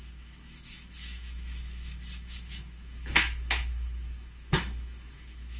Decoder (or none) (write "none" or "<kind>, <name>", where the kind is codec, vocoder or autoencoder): autoencoder, DAC-VAE